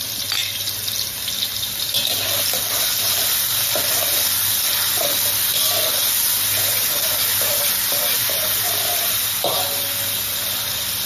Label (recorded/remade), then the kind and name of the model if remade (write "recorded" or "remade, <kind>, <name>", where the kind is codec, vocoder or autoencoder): recorded